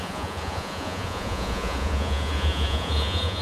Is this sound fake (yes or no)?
yes